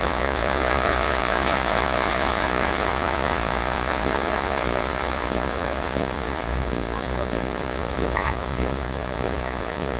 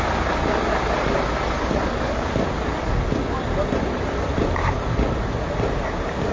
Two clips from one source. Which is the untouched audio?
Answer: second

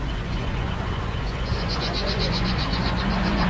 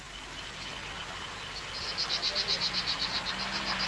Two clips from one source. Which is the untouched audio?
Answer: second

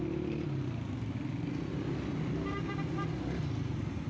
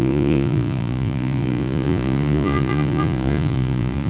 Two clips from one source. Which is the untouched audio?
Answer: first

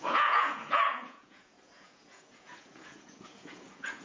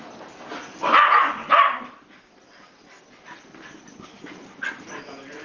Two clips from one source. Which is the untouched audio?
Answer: second